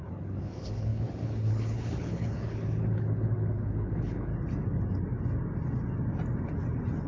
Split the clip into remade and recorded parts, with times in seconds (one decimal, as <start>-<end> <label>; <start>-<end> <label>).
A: 0.0-4.3 remade; 4.3-7.1 recorded